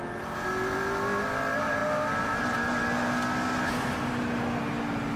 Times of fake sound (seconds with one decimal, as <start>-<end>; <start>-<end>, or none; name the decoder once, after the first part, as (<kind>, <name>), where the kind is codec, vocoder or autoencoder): none